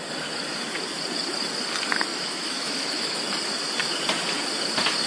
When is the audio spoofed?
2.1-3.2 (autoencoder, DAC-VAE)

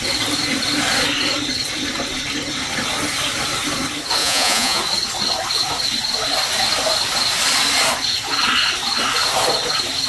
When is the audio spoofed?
4.2-4.8 (vocoder, Vocos)

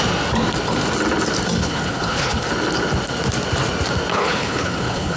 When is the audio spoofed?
1.6-2.5 (codec, HILCodec); 4.1-5.2

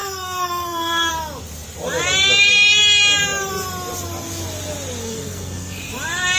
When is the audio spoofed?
0.0-1.1 (codec, SNAC); 5.0-5.8

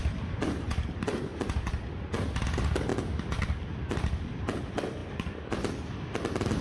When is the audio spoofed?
none

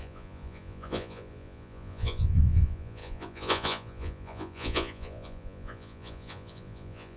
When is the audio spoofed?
0.0-7.2 (vocoder, Vocos)

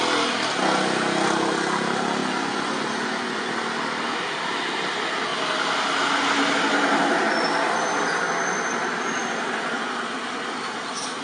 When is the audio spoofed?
2.2-3.5 (vocoder, Vocos)